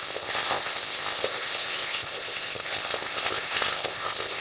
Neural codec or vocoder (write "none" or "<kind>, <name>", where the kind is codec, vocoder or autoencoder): codec, ZipCodec